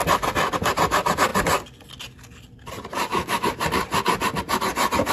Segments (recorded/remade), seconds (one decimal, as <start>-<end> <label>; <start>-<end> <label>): 0.0-3.1 recorded; 3.1-3.6 remade; 3.6-5.1 recorded